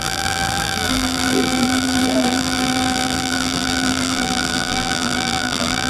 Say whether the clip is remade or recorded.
remade